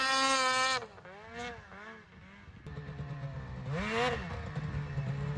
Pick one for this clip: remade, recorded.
recorded